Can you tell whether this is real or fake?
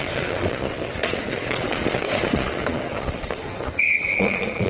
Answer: fake